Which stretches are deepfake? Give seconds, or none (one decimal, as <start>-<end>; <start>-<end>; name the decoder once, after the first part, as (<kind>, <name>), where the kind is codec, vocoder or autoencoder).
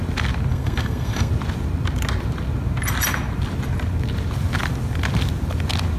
0.5-1.3 (codec, SNAC)